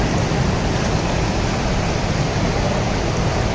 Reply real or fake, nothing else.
real